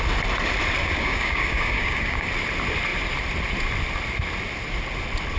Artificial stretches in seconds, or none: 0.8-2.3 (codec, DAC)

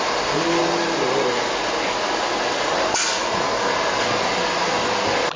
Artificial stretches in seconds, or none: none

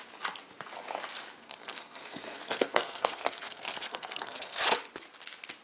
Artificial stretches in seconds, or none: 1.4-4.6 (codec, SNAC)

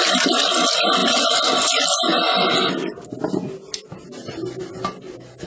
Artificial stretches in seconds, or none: none

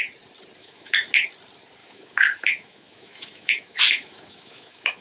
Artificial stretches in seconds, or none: 0.6-1.1 (autoencoder, DAC-VAE); 1.8-5.0

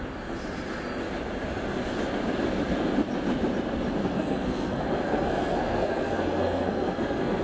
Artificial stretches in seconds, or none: 4.0-7.4 (codec, SNAC)